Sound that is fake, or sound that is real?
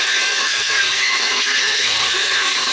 fake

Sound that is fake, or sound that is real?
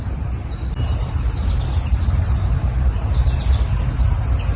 real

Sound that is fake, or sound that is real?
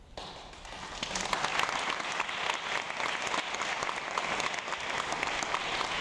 real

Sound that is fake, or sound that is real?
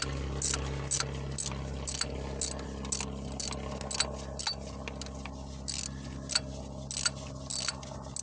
real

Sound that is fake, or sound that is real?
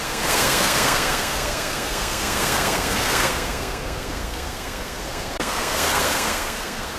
fake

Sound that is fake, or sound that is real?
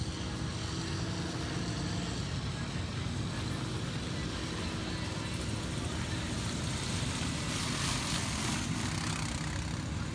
real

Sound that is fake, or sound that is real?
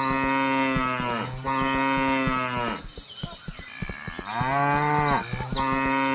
real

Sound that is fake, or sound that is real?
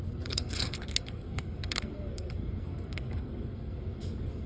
fake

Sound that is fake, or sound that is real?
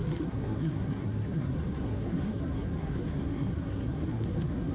fake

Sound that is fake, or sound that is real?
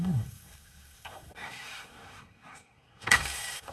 fake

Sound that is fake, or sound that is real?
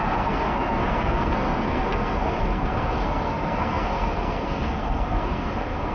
fake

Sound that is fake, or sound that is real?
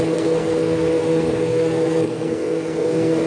fake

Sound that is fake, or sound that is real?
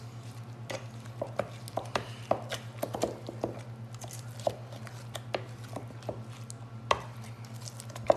real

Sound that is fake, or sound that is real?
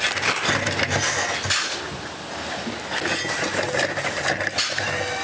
real